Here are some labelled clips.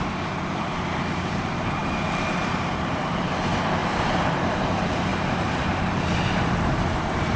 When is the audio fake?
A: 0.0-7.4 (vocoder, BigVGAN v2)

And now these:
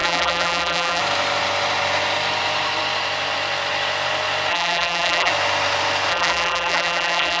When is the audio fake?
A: 0.0-1.0 (vocoder, BigVGAN v2); 4.5-5.3; 6.1-7.4

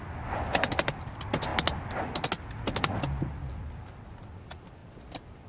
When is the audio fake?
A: none

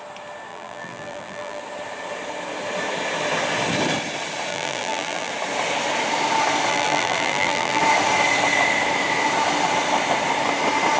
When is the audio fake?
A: 0.5-1.6 (vocoder, BigVGAN v2); 4.5-5.3; 6.7-7.8

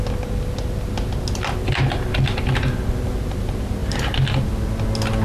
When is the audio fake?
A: 3.8-4.4 (vocoder, BigVGAN v2)

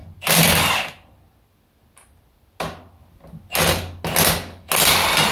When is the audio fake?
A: none

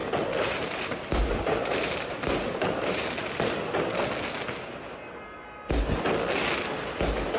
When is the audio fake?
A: 0.0-3.4 (vocoder, BigVGAN v2)

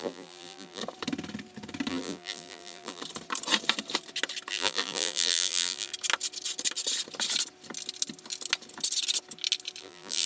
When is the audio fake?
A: 0.0-0.8 (vocoder, BigVGAN v2); 1.9-3.0; 4.5-5.9; 9.8-10.3